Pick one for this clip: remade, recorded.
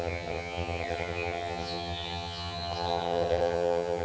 remade